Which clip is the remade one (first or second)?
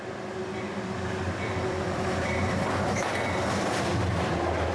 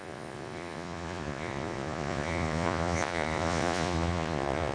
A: second